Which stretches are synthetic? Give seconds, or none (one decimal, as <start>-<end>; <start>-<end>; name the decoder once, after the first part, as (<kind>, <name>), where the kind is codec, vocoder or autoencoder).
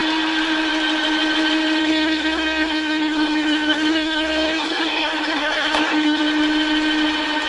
1.8-6.2 (codec, SNAC)